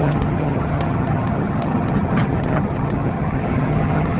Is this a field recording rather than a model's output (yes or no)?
no